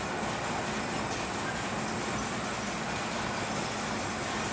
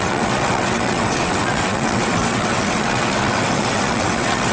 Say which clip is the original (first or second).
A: first